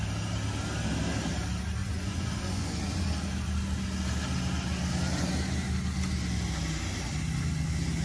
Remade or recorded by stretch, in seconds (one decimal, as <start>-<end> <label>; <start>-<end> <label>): 0.0-1.8 recorded; 1.8-3.3 remade; 3.3-8.0 recorded